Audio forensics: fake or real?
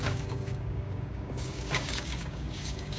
fake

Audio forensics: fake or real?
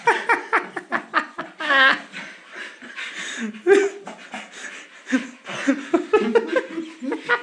real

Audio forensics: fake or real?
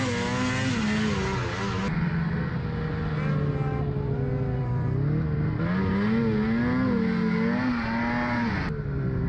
real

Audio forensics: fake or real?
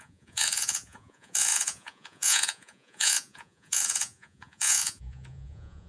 fake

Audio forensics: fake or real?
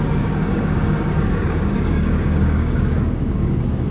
fake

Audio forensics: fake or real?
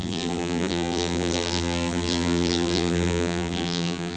fake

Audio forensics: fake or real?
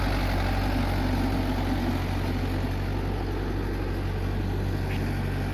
real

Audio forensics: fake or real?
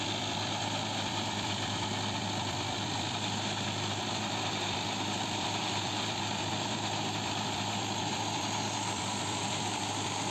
fake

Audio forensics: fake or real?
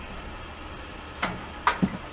real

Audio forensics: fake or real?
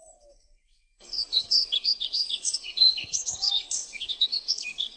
fake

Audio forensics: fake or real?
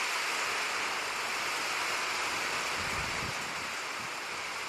real